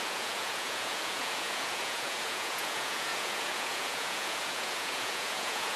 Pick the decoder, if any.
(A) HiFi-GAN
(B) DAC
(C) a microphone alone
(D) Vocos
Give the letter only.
D